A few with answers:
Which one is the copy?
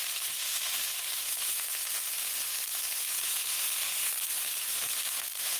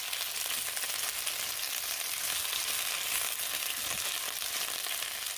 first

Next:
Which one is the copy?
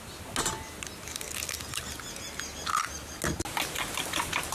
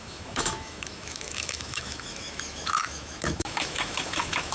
second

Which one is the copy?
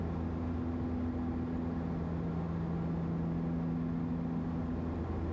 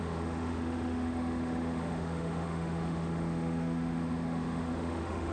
second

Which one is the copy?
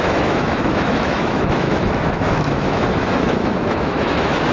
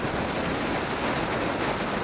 first